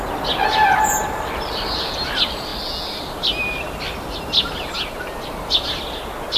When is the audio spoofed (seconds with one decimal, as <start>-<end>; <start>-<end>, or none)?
1.0-1.9